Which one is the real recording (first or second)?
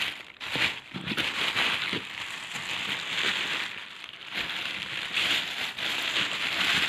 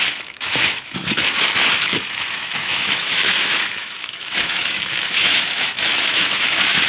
first